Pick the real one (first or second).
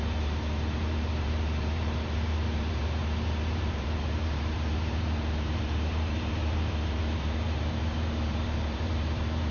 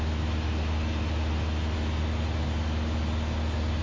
second